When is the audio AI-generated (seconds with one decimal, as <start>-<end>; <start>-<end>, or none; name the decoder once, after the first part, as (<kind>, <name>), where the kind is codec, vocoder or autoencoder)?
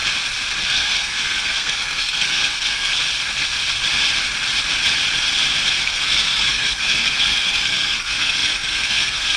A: 0.6-2.9 (codec, SNAC); 5.8-9.4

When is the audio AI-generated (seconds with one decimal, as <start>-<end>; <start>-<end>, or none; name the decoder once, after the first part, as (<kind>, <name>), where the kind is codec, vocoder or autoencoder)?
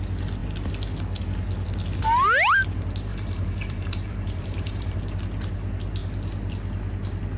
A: 3.1-5.0 (vocoder, BigVGAN v2)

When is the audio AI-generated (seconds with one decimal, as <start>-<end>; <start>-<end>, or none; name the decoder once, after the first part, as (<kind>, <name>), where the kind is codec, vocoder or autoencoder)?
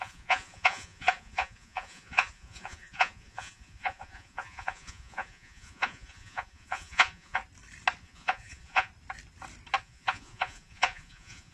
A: 0.0-7.4 (vocoder, Vocos); 8.0-8.9; 9.8-11.5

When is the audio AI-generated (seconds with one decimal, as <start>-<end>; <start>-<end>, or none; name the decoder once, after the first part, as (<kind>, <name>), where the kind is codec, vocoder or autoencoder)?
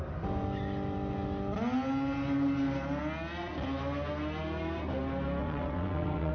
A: 5.4-6.3 (vocoder, WaveNeXt)